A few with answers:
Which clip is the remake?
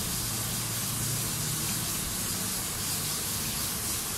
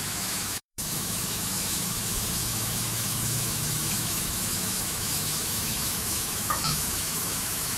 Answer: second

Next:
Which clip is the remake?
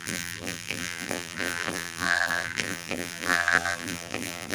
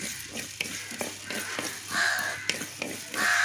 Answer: first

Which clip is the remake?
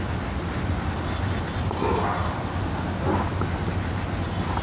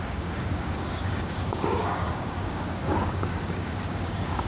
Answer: second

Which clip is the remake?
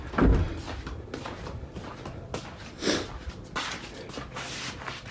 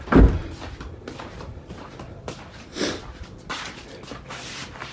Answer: second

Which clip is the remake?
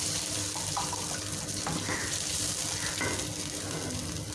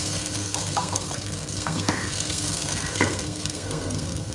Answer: second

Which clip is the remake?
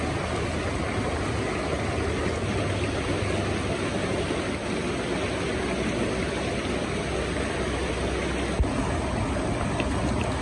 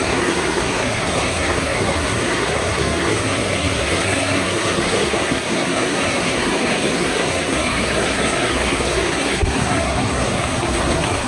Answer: second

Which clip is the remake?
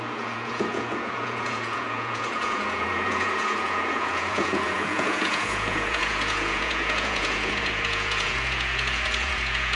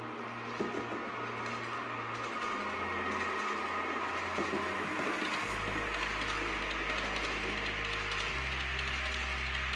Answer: first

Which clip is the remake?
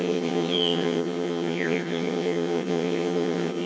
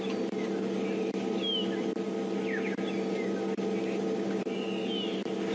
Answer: first